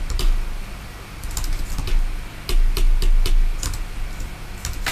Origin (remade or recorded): recorded